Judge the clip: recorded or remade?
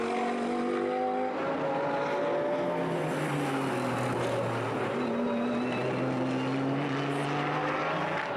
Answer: recorded